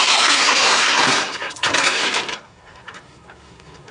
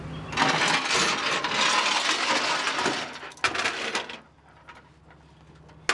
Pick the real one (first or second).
second